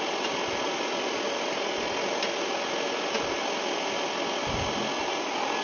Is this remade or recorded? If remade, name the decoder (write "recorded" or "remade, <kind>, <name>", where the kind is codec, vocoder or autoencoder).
recorded